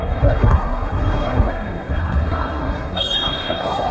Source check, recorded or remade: remade